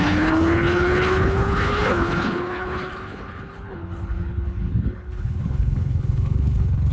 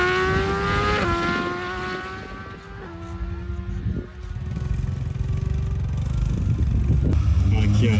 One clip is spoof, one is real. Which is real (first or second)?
second